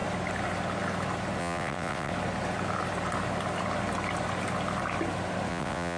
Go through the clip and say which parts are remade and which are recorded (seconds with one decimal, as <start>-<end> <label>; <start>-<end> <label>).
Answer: 0.0-1.4 recorded; 1.4-2.1 remade; 2.1-5.5 recorded; 5.5-6.0 remade